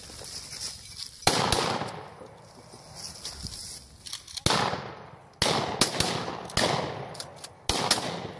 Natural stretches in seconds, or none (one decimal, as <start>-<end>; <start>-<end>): 0.0-8.4